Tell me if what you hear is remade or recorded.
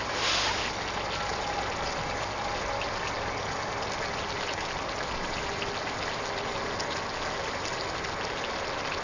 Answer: recorded